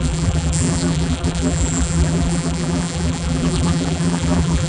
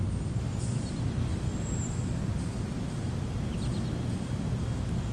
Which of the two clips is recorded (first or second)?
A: second